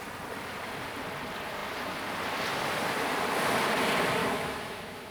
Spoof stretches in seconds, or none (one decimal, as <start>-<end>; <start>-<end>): 4.2-5.1